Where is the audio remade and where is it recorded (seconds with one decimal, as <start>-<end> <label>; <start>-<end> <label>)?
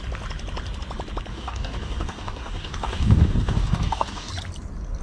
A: 0.0-1.3 recorded; 1.3-4.3 remade; 4.3-5.0 recorded